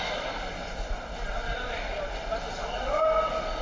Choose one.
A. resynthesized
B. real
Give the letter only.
B